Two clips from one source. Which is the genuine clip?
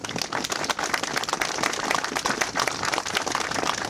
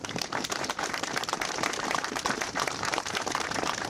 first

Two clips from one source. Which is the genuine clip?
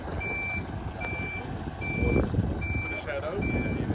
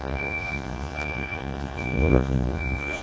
first